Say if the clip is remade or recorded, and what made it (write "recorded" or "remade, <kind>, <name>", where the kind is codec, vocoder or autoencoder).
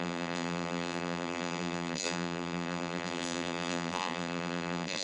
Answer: remade, vocoder, BigVGAN v2